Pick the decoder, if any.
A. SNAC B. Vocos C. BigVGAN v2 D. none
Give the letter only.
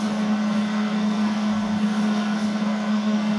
A